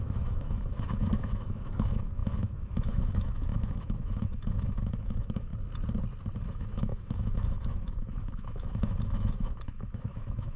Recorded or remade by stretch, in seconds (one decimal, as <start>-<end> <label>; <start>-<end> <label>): 0.0-5.5 remade; 5.5-6.5 recorded; 6.5-10.6 remade